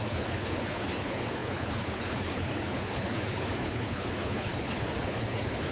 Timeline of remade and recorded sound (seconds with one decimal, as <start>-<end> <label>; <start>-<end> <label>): 0.0-5.7 remade